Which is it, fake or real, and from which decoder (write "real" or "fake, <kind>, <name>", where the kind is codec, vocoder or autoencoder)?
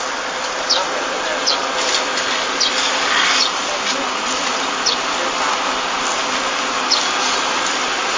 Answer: real